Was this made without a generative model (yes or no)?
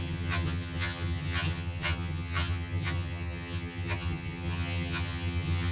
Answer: no